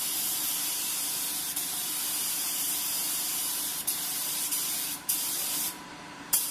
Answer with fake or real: fake